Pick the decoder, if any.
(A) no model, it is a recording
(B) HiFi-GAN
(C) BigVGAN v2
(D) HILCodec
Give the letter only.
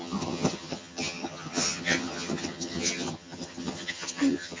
B